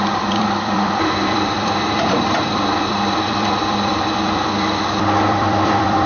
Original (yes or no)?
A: no